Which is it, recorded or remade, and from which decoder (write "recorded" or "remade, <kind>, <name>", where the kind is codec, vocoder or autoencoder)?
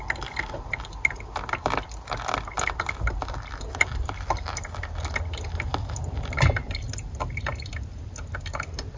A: recorded